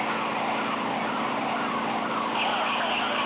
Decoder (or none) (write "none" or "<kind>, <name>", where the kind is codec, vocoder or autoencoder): none